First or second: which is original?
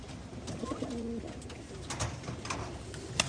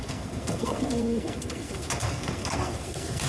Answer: first